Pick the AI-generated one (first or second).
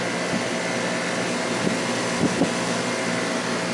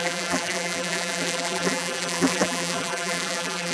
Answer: second